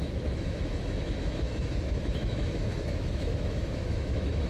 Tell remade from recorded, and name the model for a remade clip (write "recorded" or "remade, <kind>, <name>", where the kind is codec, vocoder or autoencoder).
remade, autoencoder, DAC-VAE